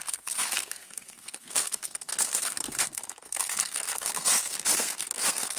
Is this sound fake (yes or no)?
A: yes